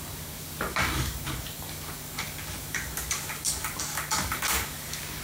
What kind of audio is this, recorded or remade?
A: remade